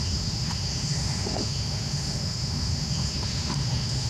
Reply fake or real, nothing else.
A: fake